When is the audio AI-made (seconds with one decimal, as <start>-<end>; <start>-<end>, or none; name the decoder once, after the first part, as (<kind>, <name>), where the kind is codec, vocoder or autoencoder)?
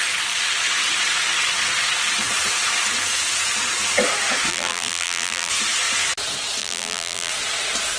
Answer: 4.5-5.5 (vocoder, BigVGAN v2); 6.6-7.3